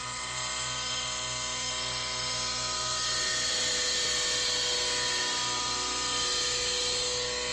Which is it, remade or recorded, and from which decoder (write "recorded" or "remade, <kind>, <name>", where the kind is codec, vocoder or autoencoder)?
recorded